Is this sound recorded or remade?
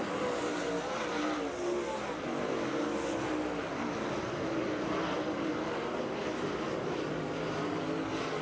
recorded